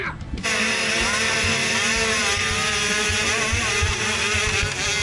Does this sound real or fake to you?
real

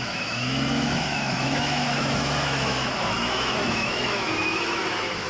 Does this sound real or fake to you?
fake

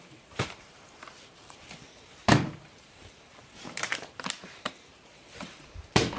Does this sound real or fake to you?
fake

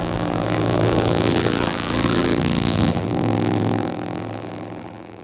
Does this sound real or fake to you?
fake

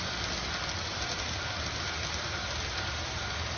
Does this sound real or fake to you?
real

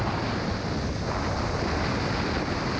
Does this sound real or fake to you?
real